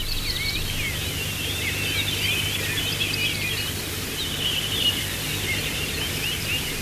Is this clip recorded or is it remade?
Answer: recorded